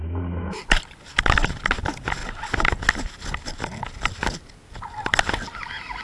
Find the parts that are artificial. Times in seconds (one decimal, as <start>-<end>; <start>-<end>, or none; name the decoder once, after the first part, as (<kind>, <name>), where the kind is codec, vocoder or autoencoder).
0.0-0.6 (autoencoder, DAC-VAE)